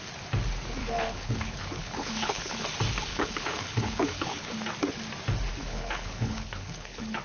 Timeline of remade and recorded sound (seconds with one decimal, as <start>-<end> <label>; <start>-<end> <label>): 0.0-0.8 recorded; 0.8-2.6 remade; 2.6-3.1 recorded; 3.1-4.5 remade; 4.5-5.6 recorded; 5.6-7.2 remade